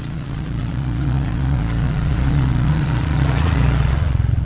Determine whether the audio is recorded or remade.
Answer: remade